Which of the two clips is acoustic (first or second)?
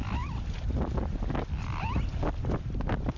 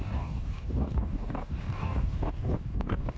first